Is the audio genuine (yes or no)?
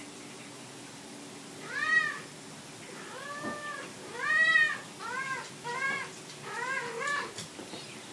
yes